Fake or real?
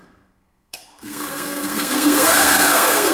fake